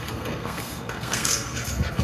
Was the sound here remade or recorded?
remade